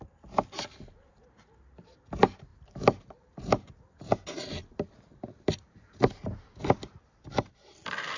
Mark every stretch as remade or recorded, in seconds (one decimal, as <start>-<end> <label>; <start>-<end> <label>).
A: 0.0-2.5 recorded; 2.5-3.7 remade; 3.7-5.1 recorded; 5.1-7.0 remade; 7.0-8.2 recorded